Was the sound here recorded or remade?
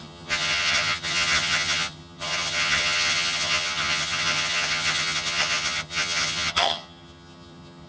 remade